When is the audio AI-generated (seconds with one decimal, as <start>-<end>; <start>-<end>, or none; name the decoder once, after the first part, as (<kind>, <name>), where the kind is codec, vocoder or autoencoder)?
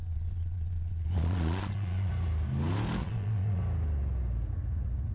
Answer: 0.0-2.1 (vocoder, Vocos); 3.0-3.6